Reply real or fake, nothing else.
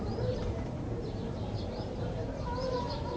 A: fake